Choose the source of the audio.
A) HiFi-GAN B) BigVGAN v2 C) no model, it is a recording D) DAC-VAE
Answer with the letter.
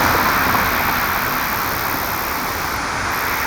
C